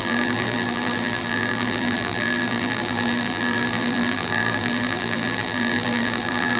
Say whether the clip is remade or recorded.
remade